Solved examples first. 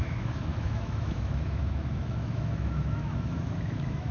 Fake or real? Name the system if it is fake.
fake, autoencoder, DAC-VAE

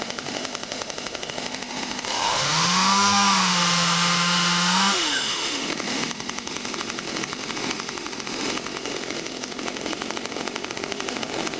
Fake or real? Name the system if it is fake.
fake, autoencoder, DAC-VAE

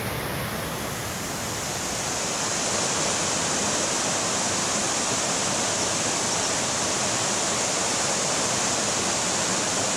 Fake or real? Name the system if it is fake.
real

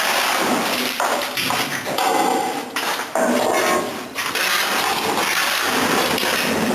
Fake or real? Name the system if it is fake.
real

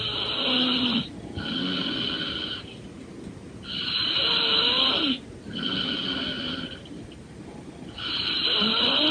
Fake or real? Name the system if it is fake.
real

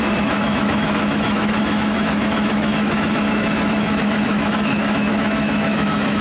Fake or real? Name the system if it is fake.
fake, autoencoder, DAC-VAE